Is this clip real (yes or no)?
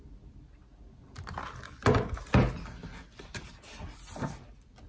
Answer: yes